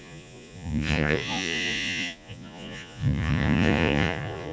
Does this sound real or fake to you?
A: fake